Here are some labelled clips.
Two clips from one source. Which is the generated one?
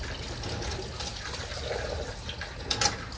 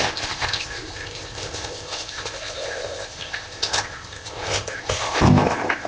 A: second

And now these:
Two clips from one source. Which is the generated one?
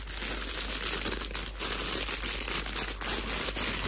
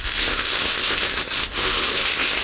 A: second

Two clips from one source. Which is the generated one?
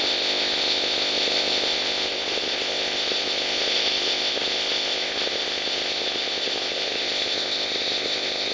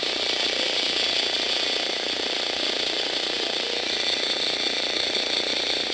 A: first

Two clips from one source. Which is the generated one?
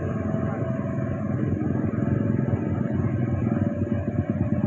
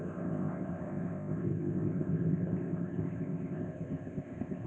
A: second